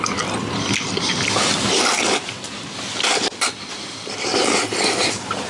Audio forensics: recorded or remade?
remade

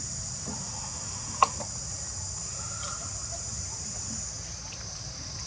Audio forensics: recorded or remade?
recorded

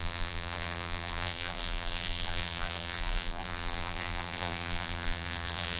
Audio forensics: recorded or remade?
remade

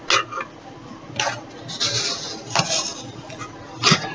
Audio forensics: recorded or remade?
recorded